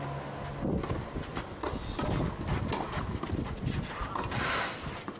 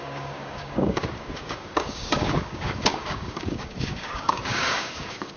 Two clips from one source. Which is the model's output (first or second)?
second